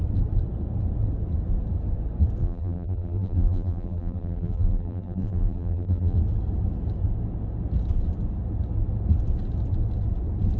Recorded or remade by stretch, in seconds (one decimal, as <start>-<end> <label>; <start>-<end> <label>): 0.0-2.4 recorded; 2.4-6.2 remade; 6.2-10.6 recorded